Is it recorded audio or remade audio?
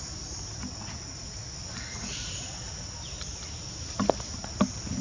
recorded